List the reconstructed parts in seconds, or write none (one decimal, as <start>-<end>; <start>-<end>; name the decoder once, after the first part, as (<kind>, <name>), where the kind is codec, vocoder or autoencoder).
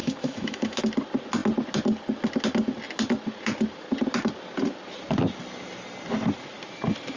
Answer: 0.0-0.8 (autoencoder, DAC-VAE)